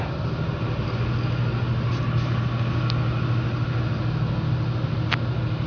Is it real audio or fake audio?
real